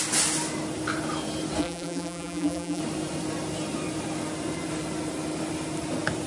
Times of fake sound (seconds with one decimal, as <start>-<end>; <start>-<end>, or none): 1.6-2.8